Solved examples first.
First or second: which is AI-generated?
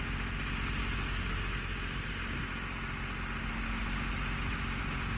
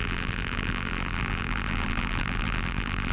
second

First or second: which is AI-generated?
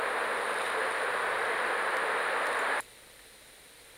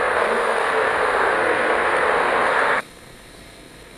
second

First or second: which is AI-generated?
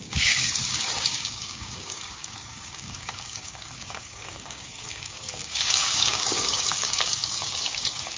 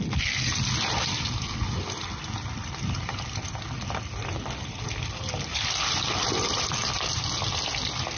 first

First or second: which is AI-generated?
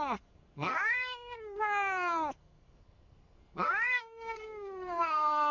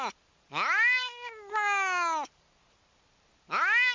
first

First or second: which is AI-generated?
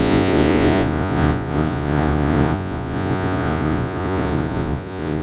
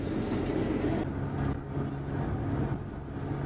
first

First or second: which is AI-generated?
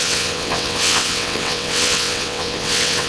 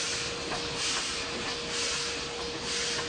first